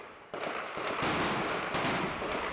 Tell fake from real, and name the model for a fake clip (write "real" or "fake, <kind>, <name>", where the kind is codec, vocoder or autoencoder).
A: real